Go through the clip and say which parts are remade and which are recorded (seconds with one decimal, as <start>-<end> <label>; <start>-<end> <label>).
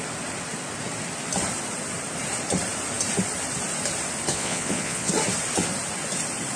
0.0-4.3 recorded; 4.3-5.1 remade; 5.1-6.6 recorded